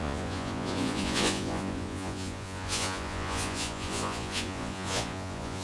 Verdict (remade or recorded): remade